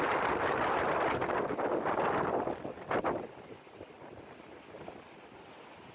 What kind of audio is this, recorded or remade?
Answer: recorded